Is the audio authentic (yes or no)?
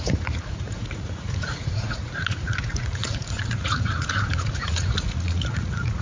no